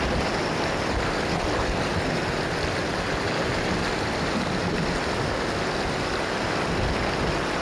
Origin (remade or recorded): recorded